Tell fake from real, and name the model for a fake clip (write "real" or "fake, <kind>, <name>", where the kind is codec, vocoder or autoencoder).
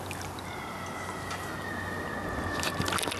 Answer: real